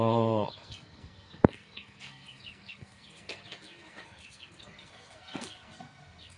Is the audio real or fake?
fake